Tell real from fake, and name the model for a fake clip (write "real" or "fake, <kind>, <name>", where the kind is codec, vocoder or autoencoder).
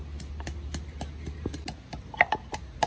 real